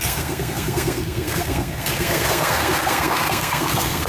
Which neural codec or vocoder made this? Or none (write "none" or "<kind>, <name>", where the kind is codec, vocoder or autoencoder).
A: codec, SNAC